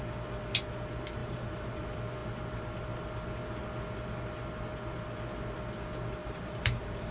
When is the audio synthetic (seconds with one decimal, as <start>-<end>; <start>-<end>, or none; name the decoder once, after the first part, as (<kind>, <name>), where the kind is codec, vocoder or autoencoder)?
1.2-1.8 (vocoder, BigVGAN v2); 6.2-7.1